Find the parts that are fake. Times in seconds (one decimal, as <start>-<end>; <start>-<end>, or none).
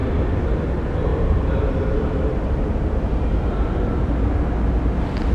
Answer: 0.0-0.6; 1.1-4.3